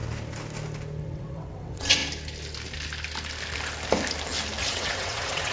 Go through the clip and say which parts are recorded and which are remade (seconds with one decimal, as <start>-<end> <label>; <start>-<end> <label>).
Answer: 0.0-1.0 recorded; 1.0-2.0 remade; 2.0-4.6 recorded; 4.6-5.5 remade